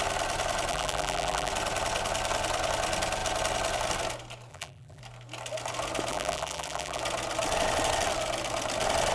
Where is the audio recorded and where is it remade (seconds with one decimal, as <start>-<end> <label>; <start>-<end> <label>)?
0.0-0.7 recorded; 0.7-1.5 remade; 1.5-4.5 recorded; 4.5-5.0 remade; 5.0-6.1 recorded; 6.1-7.0 remade; 7.0-9.1 recorded